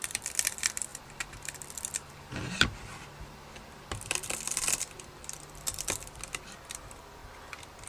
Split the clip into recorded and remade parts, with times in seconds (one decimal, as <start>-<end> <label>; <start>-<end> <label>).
0.0-7.2 remade; 7.2-7.9 recorded